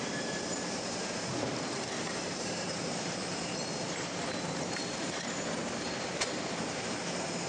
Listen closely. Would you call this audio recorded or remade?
remade